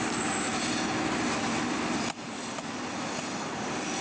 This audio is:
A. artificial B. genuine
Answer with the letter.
B